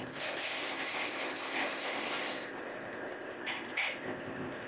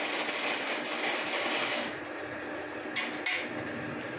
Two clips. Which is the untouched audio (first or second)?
second